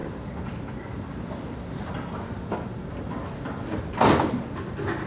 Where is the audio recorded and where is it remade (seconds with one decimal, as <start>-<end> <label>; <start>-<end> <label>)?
0.0-5.1 recorded